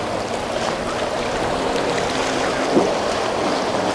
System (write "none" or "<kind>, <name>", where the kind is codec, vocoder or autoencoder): none